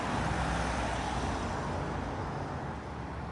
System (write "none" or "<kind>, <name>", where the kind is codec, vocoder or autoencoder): none